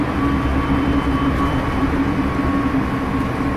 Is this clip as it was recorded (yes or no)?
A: yes